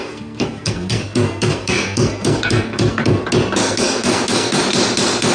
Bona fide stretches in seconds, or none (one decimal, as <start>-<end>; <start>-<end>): 3.2-3.6; 4.6-5.3